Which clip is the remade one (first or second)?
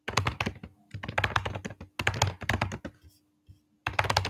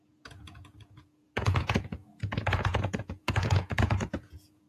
second